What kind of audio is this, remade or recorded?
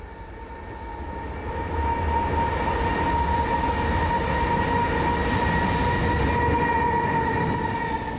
recorded